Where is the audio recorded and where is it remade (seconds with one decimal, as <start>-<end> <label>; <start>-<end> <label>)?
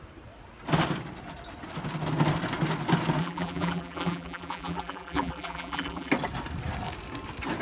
0.0-3.2 recorded; 3.2-6.1 remade; 6.1-7.6 recorded